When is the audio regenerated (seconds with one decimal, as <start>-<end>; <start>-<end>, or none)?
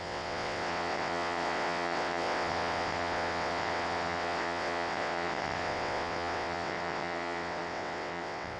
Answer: 0.0-8.6